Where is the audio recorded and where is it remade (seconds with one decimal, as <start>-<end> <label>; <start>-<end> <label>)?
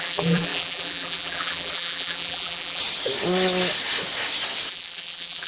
0.0-2.8 remade; 2.8-4.7 recorded; 4.7-5.5 remade